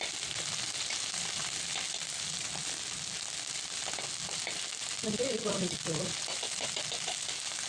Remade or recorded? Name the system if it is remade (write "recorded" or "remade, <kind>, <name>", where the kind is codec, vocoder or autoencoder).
recorded